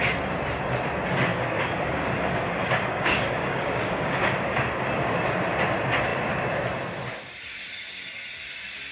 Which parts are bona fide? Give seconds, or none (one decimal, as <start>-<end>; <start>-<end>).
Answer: 0.0-1.3; 4.7-8.9